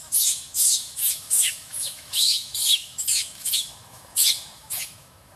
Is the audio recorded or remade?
remade